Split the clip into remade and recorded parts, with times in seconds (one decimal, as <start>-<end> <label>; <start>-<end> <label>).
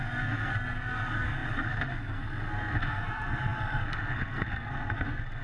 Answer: 0.0-5.4 remade